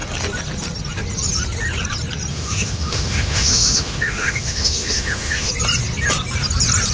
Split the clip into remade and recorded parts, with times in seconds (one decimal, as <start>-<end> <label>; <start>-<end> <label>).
0.0-2.3 recorded; 2.3-5.5 remade; 5.5-6.9 recorded